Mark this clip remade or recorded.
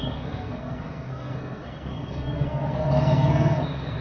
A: remade